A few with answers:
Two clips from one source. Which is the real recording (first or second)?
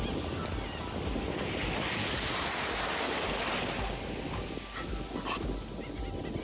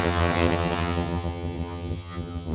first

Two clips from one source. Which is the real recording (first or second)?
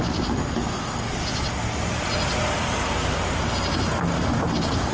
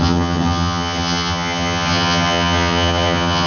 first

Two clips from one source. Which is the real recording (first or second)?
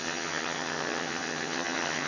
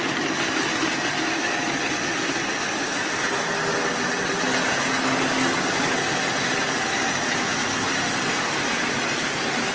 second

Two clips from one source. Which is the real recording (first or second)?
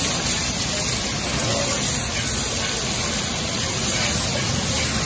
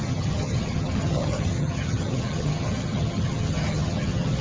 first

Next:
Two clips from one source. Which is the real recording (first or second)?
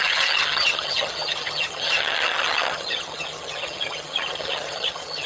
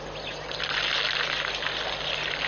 second